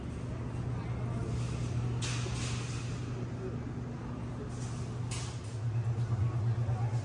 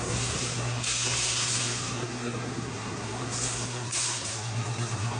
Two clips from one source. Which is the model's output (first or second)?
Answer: second